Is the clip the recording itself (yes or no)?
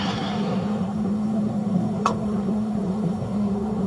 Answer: no